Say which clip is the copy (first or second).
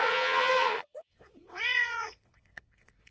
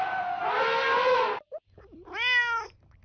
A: first